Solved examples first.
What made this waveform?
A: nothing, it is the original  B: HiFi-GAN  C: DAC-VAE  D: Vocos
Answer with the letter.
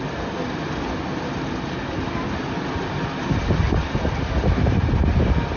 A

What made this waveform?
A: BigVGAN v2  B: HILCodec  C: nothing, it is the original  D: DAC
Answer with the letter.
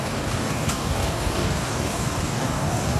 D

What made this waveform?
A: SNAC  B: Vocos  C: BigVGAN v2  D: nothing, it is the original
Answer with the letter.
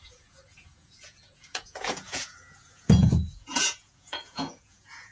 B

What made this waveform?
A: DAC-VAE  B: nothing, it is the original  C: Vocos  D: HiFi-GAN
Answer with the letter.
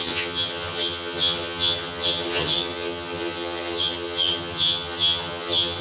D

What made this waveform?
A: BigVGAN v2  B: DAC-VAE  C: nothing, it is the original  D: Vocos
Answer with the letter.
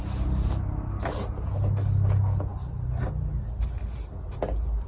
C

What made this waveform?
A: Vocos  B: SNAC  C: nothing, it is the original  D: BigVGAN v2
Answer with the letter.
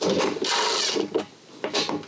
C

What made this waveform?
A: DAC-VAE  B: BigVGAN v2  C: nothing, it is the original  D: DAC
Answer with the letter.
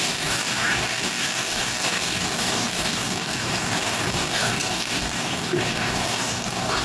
D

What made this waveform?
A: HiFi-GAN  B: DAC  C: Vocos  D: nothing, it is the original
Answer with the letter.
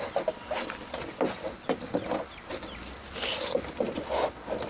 D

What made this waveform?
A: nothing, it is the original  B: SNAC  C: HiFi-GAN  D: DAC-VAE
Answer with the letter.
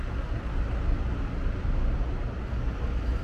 A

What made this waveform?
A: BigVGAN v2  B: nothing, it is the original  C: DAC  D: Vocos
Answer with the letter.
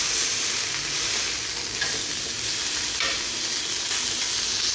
B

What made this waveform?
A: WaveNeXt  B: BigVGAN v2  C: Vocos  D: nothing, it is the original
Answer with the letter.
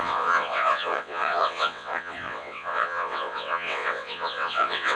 A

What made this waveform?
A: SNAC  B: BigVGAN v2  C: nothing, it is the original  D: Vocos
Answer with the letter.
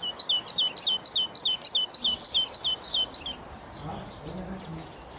C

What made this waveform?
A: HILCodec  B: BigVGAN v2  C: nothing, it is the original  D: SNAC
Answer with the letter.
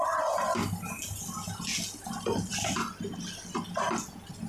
C